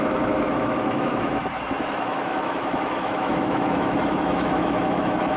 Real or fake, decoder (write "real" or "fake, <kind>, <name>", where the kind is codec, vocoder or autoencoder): fake, autoencoder, DAC-VAE